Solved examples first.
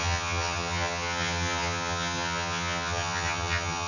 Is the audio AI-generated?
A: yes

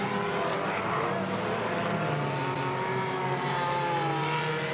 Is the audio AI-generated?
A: no